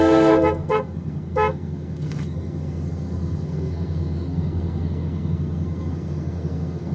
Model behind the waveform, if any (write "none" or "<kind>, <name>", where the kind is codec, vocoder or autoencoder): codec, SNAC